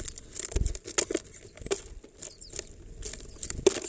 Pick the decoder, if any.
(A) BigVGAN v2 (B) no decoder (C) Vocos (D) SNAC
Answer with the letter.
B